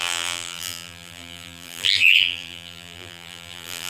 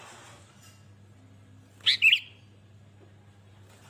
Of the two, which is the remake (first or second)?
first